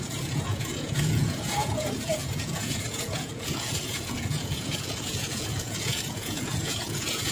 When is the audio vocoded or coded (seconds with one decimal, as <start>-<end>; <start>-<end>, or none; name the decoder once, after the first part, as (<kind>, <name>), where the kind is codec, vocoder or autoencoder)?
0.0-7.3 (vocoder, Vocos)